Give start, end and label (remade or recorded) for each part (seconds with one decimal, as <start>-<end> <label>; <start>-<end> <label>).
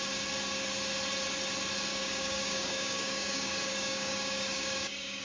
0.0-1.9 recorded; 1.9-5.2 remade